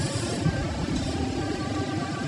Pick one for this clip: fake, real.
real